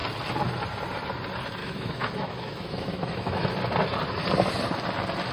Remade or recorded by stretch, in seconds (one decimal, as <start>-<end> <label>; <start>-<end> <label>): 0.0-1.6 recorded; 1.6-3.5 remade; 3.5-5.3 recorded